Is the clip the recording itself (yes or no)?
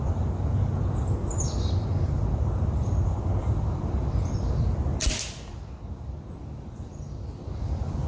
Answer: yes